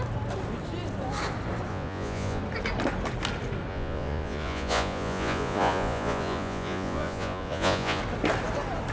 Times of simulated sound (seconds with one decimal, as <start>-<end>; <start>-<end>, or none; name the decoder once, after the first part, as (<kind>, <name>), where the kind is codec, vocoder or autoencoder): 1.7-2.4 (vocoder, Vocos); 3.7-8.0